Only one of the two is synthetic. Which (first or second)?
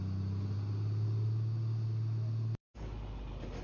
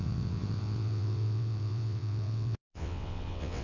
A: second